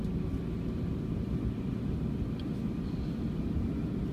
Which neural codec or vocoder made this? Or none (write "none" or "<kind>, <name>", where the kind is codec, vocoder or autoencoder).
none